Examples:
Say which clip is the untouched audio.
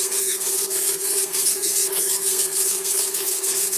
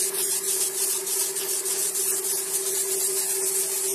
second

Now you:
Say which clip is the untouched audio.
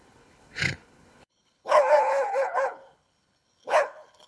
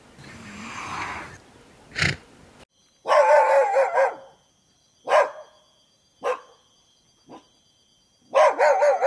second